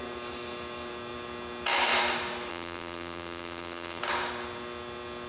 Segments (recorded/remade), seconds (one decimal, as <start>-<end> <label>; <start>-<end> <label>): 0.0-2.5 recorded; 2.5-4.0 remade; 4.0-5.3 recorded